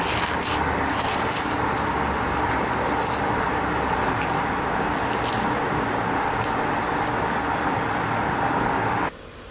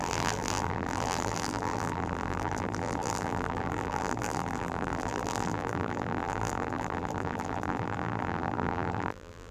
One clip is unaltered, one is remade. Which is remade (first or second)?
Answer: second